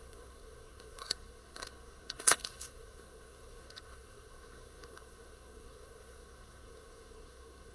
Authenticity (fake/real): fake